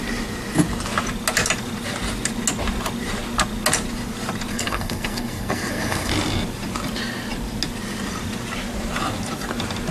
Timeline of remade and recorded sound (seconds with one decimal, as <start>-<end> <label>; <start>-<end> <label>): 0.0-4.5 recorded; 4.5-6.1 remade; 6.1-9.9 recorded